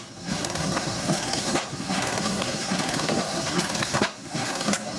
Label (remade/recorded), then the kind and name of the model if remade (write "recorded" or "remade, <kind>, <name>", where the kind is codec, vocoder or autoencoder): remade, codec, SNAC